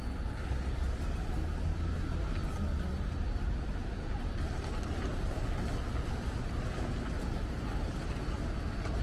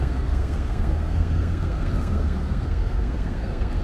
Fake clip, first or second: second